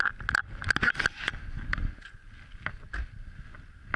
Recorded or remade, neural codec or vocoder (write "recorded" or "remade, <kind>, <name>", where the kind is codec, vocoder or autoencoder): recorded